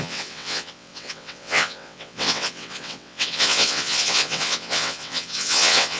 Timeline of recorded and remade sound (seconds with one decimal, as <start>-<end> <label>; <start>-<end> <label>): 0.0-6.0 remade